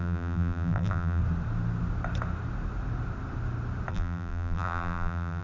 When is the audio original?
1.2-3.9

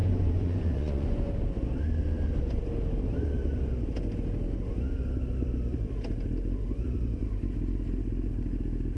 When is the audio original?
1.3-9.0

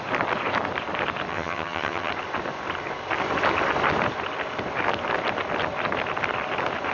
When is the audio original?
0.0-1.3; 2.1-6.9

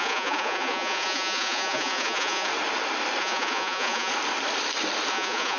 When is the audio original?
2.5-3.2; 4.1-5.1

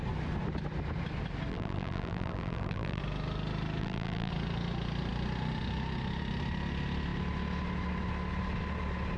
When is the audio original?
0.0-1.5; 3.0-3.8; 4.3-9.2

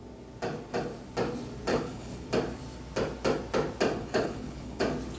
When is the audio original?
0.0-1.7; 2.3-4.0; 4.8-5.2

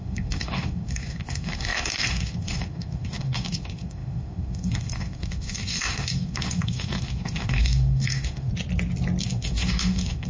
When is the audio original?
8.5-9.2